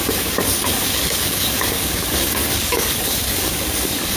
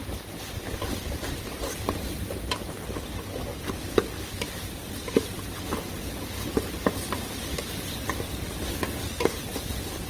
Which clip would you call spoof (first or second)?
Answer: first